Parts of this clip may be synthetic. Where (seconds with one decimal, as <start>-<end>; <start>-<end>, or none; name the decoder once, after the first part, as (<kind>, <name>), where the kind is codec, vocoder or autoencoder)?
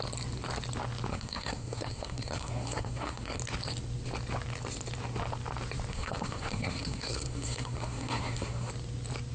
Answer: 1.1-3.4 (codec, SNAC); 5.9-8.7